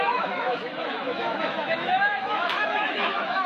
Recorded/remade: remade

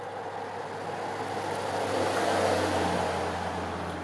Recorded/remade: recorded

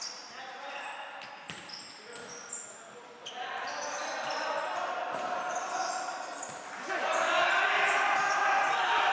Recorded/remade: recorded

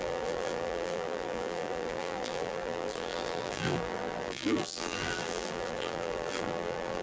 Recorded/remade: remade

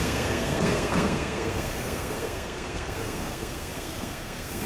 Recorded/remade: remade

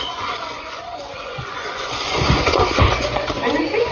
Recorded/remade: remade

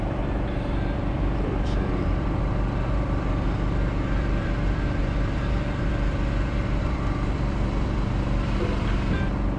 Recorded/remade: remade